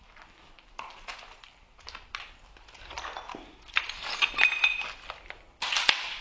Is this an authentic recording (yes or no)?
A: yes